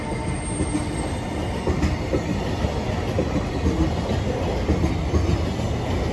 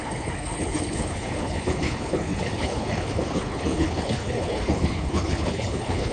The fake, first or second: second